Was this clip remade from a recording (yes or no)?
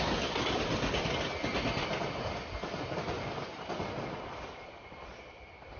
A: no